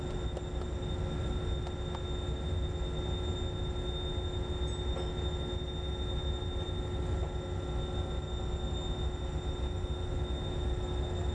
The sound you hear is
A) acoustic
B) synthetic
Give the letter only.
A